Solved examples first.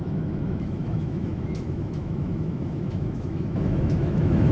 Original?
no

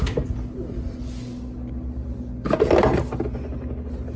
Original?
yes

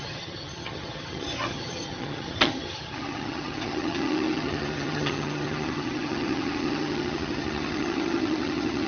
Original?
no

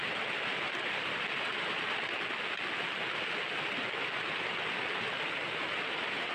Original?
yes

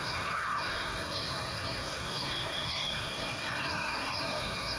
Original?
no